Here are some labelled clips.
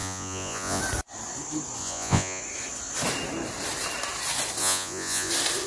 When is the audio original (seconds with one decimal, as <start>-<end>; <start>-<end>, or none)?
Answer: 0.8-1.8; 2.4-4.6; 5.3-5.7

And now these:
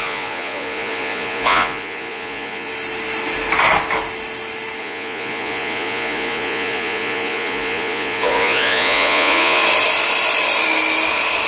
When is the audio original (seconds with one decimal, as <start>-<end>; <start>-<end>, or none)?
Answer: 2.7-4.8; 9.6-11.5

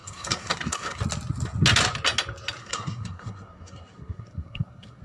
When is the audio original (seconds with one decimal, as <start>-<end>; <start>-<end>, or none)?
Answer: 1.0-2.6